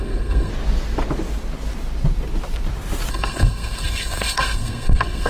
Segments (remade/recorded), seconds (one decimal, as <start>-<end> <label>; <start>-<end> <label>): 0.0-0.5 remade; 0.5-3.1 recorded; 3.1-5.3 remade